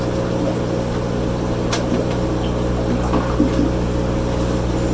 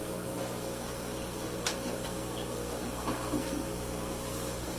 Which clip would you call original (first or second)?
first